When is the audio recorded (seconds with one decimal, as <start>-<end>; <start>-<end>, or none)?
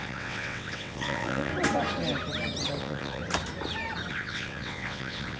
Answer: 1.5-2.8; 3.2-4.1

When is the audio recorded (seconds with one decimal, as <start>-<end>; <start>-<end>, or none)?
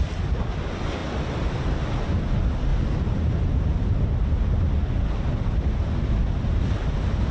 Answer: 0.0-7.3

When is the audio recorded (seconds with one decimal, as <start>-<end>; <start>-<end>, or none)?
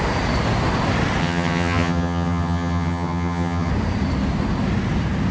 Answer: 0.0-1.2; 3.7-5.3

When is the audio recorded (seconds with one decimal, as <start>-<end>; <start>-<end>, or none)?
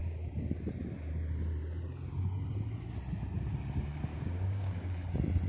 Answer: 0.0-4.1; 4.9-5.5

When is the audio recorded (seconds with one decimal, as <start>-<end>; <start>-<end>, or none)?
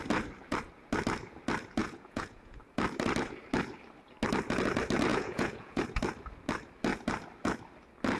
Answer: 0.0-1.8; 2.6-5.1; 5.8-8.2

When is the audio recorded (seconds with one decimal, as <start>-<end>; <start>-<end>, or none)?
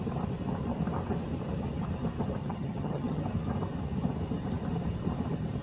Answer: 0.0-2.4; 3.2-5.6